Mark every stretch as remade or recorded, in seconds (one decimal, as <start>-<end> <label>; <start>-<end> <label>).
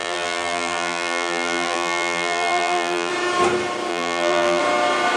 0.0-3.1 remade; 3.1-3.9 recorded; 3.9-4.6 remade; 4.6-5.2 recorded